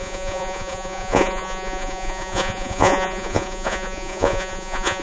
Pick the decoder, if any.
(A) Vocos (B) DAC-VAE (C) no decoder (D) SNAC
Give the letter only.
A